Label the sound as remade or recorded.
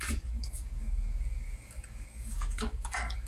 remade